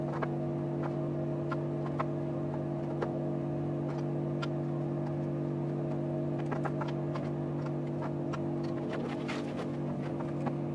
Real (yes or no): yes